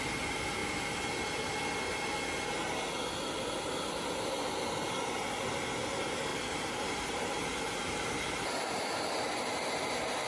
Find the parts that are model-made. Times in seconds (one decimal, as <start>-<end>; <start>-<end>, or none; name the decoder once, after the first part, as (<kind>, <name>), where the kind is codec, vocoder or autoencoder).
6.3-8.8 (vocoder, BigVGAN v2)